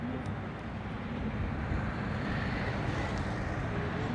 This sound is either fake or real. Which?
real